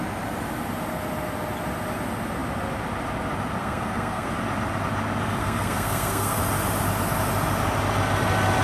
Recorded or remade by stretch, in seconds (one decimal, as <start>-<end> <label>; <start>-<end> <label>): 0.0-3.6 recorded; 3.6-4.3 remade; 4.3-5.4 recorded; 5.4-6.4 remade; 6.4-8.6 recorded